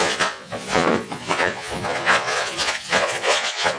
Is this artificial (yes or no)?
yes